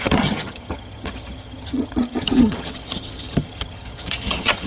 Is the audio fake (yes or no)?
yes